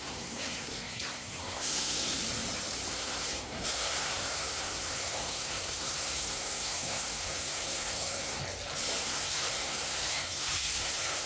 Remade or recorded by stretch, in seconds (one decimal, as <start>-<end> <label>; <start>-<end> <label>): 0.0-2.2 remade; 2.2-2.9 recorded; 2.9-8.4 remade; 8.4-9.0 recorded; 9.0-11.3 remade